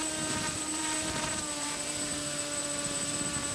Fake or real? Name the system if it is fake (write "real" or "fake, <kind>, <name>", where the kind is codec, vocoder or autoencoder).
fake, vocoder, BigVGAN v2